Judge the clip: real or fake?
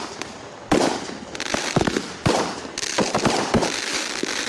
fake